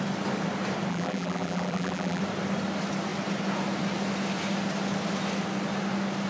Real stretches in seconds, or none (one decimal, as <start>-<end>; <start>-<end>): 0.0-0.9; 2.2-6.3